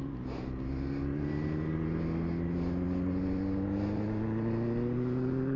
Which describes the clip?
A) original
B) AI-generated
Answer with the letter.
A